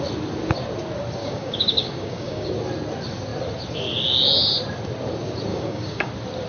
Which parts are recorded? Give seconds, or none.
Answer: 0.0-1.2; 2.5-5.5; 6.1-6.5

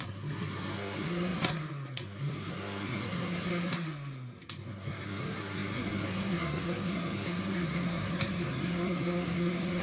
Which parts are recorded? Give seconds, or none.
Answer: none

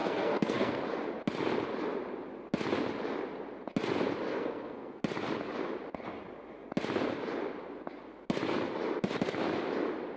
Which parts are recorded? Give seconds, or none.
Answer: 0.8-4.3; 5.0-10.2

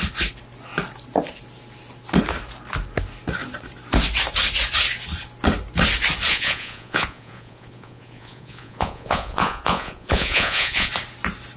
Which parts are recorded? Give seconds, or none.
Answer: 0.0-6.3; 10.9-11.6

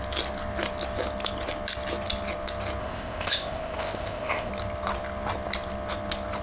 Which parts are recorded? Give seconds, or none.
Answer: 0.0-2.8; 4.5-6.4

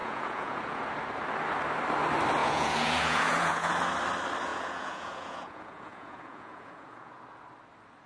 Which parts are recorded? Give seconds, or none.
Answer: 0.8-2.4; 3.7-4.5; 7.2-8.1

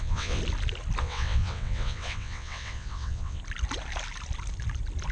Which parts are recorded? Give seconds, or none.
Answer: 0.4-1.0; 3.4-5.1

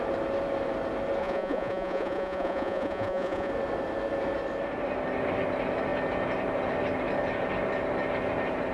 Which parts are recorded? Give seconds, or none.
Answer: 0.0-1.2; 3.5-8.7